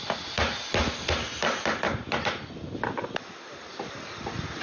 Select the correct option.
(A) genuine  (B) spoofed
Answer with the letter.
A